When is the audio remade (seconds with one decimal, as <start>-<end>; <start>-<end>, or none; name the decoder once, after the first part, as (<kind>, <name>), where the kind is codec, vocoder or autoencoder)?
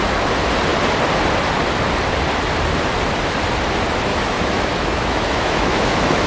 4.1-6.3 (autoencoder, DAC-VAE)